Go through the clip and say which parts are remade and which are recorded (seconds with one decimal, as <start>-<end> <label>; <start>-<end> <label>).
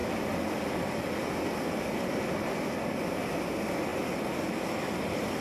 0.0-5.4 recorded